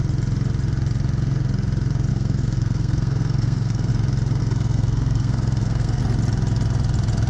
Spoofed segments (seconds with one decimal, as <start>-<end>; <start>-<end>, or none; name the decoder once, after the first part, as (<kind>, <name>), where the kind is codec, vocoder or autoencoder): 2.1-3.9 (codec, SNAC); 4.4-6.0